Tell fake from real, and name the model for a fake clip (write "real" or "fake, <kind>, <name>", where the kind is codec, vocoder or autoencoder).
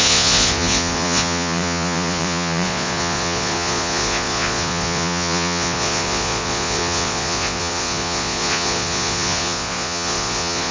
fake, vocoder, Vocos